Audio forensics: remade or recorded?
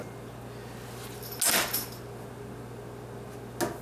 recorded